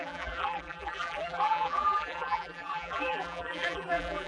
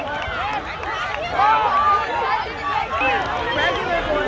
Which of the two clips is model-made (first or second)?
first